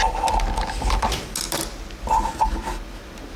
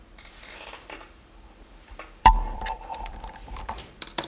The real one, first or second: first